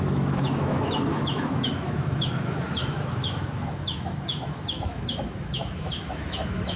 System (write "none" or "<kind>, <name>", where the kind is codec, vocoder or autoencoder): autoencoder, DAC-VAE